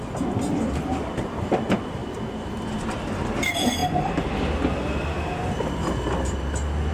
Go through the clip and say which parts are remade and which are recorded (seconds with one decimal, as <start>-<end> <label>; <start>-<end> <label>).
0.0-6.9 recorded